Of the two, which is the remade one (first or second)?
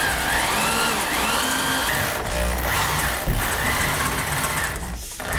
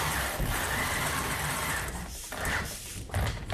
second